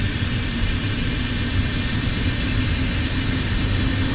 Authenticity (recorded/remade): recorded